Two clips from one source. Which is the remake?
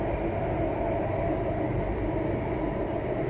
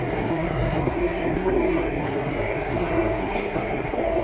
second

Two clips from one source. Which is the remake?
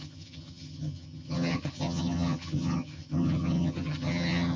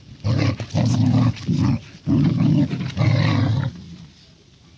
first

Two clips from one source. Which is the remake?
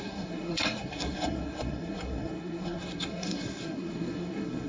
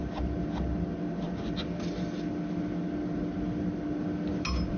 first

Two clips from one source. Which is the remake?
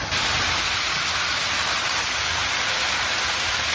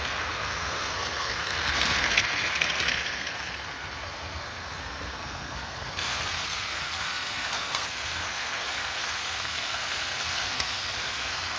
second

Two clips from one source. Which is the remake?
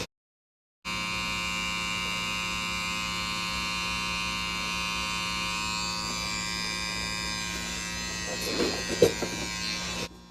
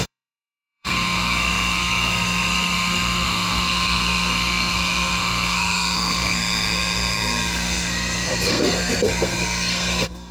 second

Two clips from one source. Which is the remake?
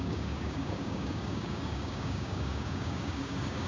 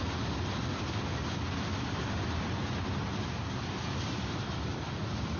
first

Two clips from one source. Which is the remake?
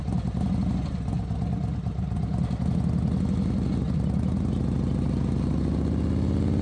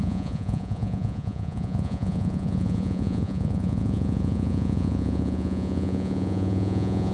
second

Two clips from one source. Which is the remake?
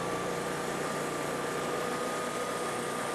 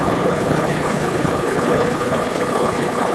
second